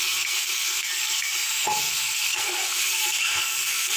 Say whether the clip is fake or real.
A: fake